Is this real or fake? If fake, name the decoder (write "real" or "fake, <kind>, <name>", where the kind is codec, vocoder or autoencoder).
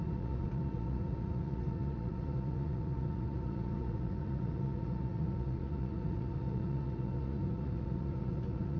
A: fake, vocoder, Vocos